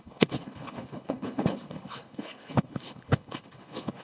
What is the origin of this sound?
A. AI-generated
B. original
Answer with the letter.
A